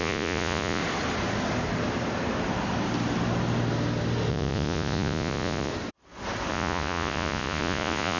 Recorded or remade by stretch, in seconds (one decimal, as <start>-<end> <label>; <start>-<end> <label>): 0.0-0.8 remade; 0.8-4.3 recorded; 4.3-5.7 remade; 5.7-6.5 recorded; 6.5-8.2 remade

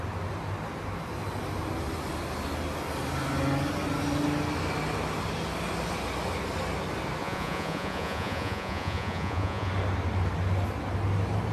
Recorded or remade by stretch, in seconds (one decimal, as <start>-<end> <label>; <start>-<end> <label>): 0.0-7.2 recorded; 7.2-9.7 remade; 9.7-11.5 recorded

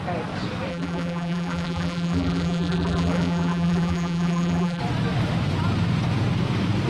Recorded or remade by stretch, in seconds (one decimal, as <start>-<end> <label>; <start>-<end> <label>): 0.0-0.7 recorded; 0.7-4.8 remade; 4.8-6.9 recorded